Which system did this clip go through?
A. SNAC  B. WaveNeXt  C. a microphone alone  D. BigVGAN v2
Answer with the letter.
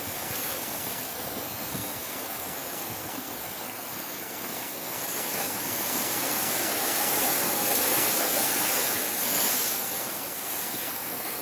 A